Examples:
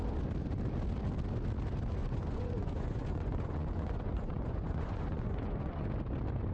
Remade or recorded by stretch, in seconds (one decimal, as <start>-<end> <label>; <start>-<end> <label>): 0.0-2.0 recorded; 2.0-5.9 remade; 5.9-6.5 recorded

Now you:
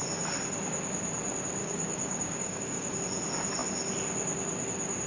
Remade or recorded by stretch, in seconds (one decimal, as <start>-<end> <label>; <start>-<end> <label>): 0.0-1.6 recorded; 1.6-3.0 remade; 3.0-5.1 recorded

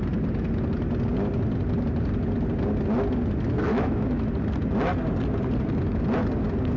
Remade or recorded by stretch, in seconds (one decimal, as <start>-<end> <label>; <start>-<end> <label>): 0.0-3.7 recorded; 3.7-4.3 remade; 4.3-6.8 recorded

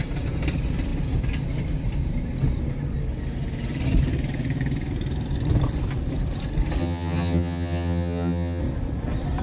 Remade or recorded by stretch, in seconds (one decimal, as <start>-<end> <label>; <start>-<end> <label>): 0.0-6.8 recorded; 6.8-8.6 remade; 8.6-9.4 recorded

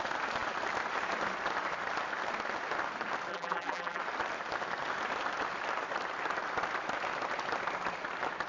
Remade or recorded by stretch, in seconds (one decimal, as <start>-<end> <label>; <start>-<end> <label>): 0.0-3.3 recorded; 3.3-4.0 remade; 4.0-8.5 recorded

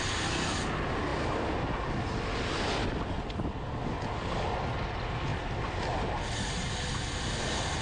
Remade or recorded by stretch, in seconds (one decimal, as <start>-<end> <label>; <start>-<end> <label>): 0.0-7.8 recorded